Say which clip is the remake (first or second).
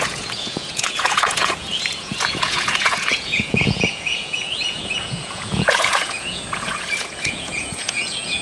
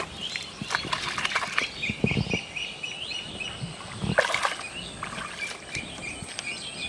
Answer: first